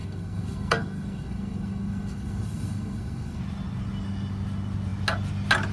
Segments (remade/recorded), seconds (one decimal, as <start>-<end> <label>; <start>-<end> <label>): 0.0-3.4 remade; 3.4-5.7 recorded